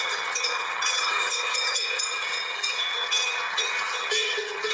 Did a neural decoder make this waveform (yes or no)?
yes